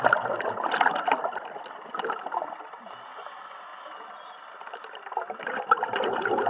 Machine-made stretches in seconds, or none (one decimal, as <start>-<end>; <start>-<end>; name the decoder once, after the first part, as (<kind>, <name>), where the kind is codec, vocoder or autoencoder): none